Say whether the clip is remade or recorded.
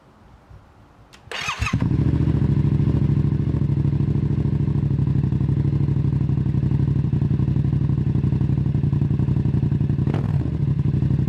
recorded